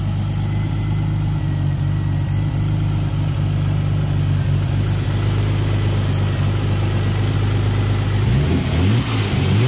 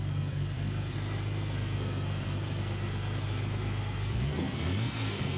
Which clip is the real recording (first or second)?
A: first